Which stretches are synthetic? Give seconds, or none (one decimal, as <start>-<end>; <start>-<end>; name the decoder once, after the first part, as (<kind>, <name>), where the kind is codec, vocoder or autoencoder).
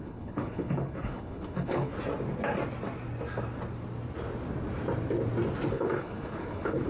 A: 0.0-1.9 (codec, HILCodec); 5.7-6.9